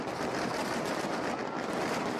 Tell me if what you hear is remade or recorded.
recorded